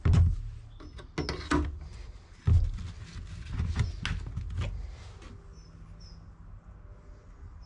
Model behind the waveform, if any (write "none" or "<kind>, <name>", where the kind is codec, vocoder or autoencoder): none